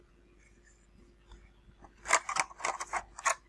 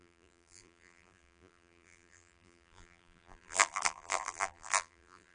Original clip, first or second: first